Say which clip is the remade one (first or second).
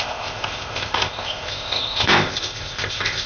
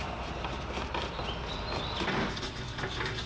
first